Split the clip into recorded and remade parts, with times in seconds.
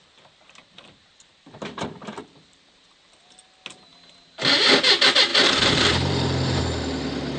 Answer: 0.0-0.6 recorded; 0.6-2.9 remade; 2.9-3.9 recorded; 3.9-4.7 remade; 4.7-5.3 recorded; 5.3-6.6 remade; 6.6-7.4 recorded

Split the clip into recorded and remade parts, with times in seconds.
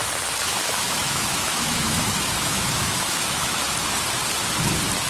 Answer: 0.0-0.5 recorded; 0.5-3.6 remade; 3.6-5.1 recorded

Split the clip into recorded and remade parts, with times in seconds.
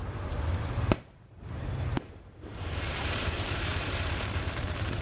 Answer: 0.0-5.0 remade